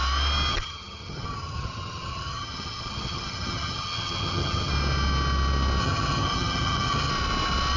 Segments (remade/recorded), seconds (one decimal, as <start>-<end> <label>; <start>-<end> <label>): 0.0-0.5 recorded; 0.5-4.7 remade; 4.7-5.8 recorded; 5.8-7.1 remade; 7.1-7.8 recorded